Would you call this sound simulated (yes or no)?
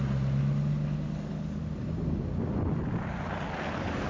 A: no